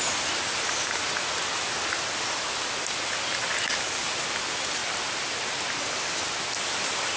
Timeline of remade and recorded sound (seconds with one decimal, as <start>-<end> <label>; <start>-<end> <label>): 0.0-7.2 recorded